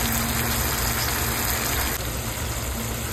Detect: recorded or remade recorded